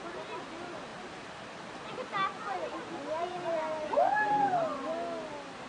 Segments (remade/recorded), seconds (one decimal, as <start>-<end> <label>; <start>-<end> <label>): 0.0-5.7 recorded